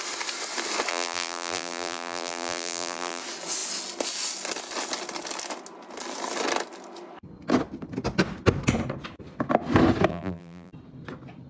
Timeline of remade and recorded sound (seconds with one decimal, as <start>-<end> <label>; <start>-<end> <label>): 0.0-0.9 recorded; 0.9-3.2 remade; 3.2-10.1 recorded; 10.1-10.7 remade; 10.7-11.5 recorded